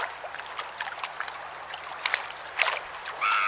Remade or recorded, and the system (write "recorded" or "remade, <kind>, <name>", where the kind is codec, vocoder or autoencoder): recorded